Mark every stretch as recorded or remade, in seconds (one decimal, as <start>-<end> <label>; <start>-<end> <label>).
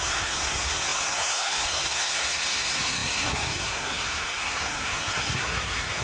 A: 0.0-6.0 remade